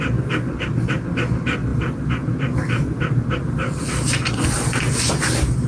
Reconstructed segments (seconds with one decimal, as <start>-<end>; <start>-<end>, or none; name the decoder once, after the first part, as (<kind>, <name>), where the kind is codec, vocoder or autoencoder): none